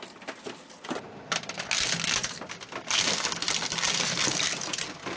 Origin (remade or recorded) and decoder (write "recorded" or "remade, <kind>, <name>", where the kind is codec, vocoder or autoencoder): recorded